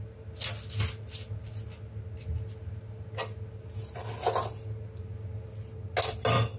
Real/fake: real